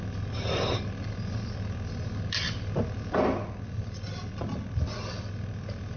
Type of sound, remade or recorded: recorded